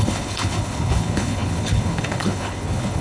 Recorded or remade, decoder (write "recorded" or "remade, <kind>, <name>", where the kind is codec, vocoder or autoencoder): remade, codec, HILCodec